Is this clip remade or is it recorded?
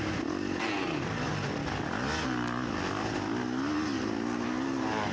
recorded